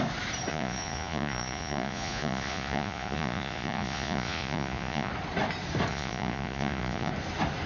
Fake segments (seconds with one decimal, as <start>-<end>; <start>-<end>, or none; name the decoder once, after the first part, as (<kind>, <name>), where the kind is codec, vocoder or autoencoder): 0.5-5.1 (vocoder, Vocos); 5.9-7.1